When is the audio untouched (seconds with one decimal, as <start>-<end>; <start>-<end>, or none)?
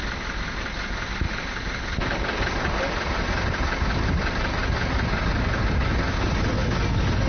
4.6-7.3